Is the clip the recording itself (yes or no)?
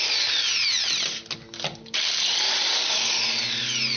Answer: yes